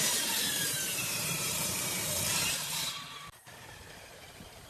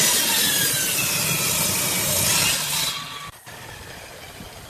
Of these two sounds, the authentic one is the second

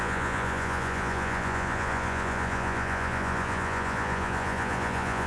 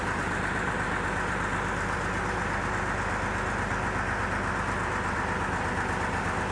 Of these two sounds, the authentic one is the second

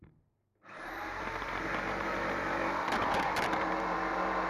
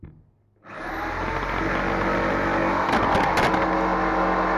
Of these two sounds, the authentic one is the second